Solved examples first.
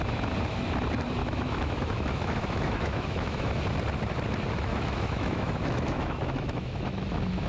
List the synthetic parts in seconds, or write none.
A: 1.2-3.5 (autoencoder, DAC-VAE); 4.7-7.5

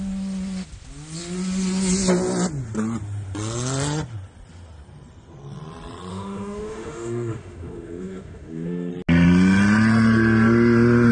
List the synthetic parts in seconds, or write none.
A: 6.1-8.9 (autoencoder, DAC-VAE)